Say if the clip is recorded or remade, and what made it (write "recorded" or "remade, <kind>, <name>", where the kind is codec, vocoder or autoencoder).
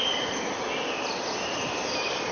recorded